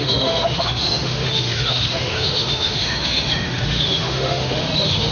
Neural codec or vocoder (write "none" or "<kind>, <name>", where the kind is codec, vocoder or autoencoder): autoencoder, DAC-VAE